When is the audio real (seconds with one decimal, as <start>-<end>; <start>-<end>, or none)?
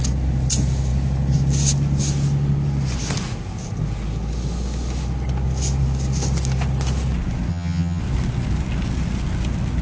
0.0-7.5; 8.0-9.8